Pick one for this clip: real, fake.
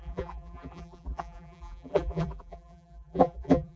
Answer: fake